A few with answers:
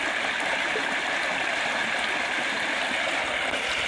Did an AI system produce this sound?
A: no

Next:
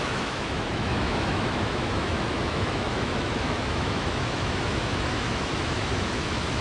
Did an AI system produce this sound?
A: yes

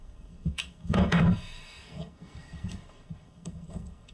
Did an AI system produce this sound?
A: yes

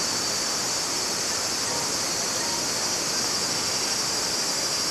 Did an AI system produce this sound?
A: no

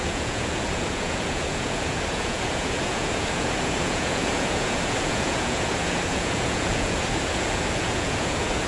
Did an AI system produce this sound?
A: yes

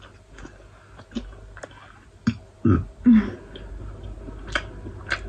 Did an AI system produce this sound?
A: no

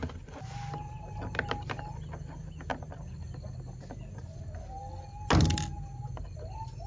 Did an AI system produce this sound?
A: no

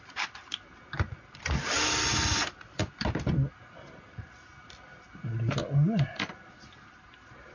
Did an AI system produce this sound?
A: no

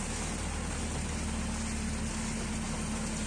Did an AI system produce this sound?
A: no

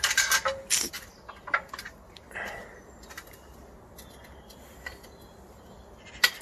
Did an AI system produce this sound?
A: no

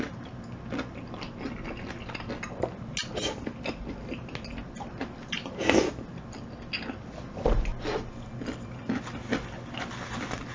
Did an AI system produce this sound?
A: no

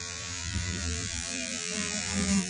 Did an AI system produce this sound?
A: yes